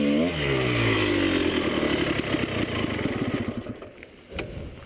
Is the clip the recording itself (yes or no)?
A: yes